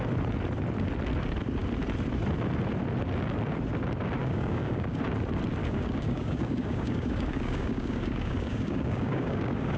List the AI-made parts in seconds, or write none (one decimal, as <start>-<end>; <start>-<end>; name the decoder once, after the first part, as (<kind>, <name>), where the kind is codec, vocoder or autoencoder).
4.2-5.0 (codec, DAC); 5.6-9.8